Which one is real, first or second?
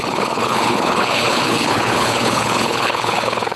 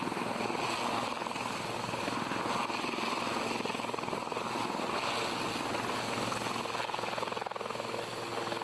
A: second